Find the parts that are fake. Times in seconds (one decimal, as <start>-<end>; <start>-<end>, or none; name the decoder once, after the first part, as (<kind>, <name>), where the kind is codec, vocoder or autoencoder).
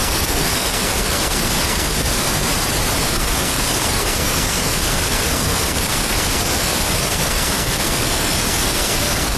0.0-2.5 (codec, SNAC); 3.0-9.4